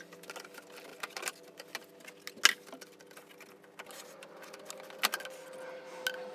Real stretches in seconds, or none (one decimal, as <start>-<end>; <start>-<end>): 0.0-6.3